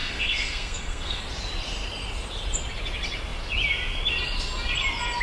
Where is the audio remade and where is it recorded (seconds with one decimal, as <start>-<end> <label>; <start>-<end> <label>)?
0.0-1.2 remade; 1.2-5.2 recorded